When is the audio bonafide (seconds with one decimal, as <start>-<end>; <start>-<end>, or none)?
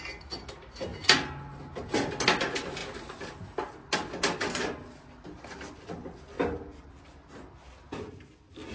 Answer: 0.0-8.7